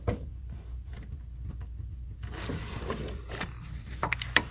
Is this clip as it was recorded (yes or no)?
no